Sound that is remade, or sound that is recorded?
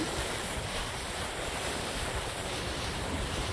remade